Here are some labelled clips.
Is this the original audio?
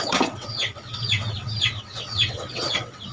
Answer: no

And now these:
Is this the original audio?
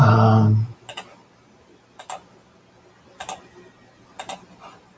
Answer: yes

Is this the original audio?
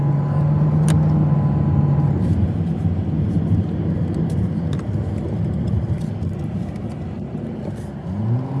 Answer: yes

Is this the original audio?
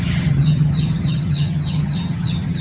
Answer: no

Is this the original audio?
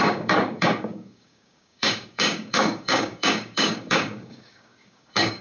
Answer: no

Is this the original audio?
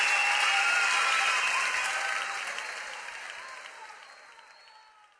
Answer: yes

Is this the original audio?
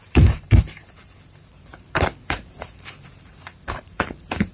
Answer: no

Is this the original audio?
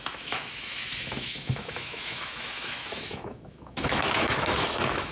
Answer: no